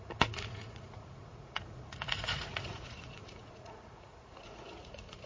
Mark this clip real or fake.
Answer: fake